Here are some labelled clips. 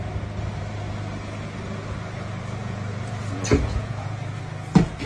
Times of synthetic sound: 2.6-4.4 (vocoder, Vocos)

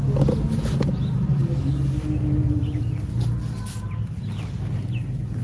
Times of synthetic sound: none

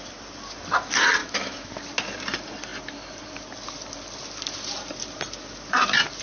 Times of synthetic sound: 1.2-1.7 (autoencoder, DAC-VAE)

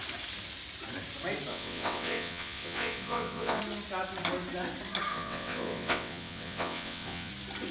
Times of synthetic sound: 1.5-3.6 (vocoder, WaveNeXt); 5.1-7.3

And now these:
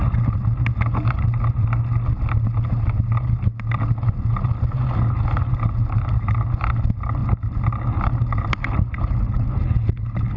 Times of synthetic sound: none

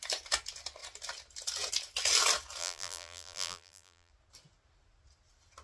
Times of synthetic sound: 2.6-4.1 (vocoder, BigVGAN v2)

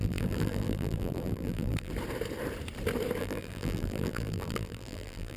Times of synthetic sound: 0.0-1.9 (vocoder, BigVGAN v2); 3.2-5.4

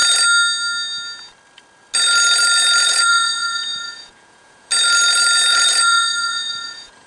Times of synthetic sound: 2.8-4.7 (vocoder, Vocos); 5.5-7.1